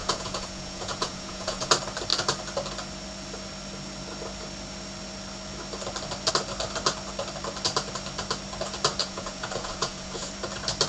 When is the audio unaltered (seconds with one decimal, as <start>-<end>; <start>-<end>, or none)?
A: 1.7-9.0; 10.3-10.9